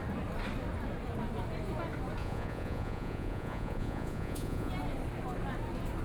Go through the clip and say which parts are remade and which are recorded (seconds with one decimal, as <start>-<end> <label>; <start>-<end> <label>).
0.0-2.2 recorded; 2.2-4.7 remade; 4.7-6.0 recorded